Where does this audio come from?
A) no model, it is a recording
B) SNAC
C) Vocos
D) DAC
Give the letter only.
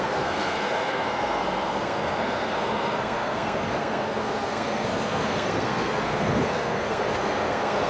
B